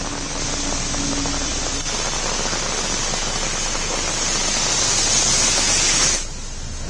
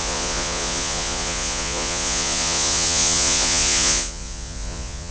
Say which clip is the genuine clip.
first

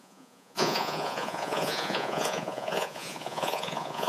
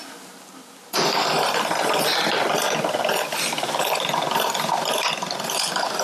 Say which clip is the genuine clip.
second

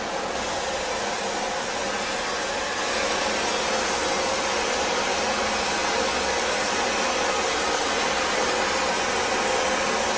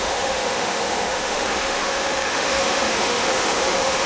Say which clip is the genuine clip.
first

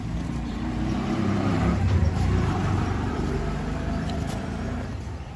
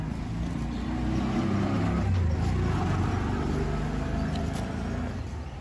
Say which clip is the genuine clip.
second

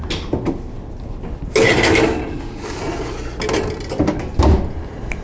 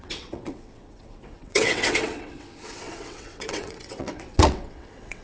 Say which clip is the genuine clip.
first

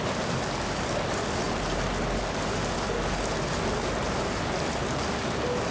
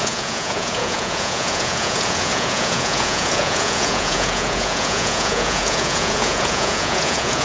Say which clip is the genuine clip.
first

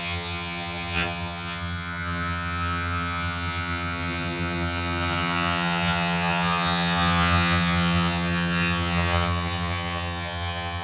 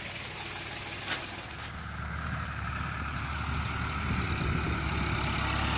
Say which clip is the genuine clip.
second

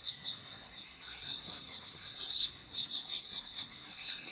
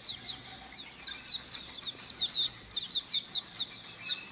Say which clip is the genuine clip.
second